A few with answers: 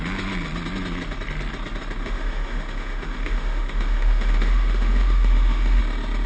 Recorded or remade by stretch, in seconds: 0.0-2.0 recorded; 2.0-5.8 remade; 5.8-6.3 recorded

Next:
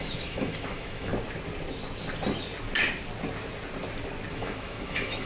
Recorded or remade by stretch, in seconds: 0.0-1.1 remade; 1.1-4.3 recorded; 4.3-5.3 remade